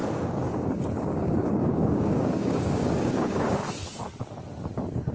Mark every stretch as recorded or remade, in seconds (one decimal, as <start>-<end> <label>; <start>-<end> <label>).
0.0-3.6 remade; 3.6-5.1 recorded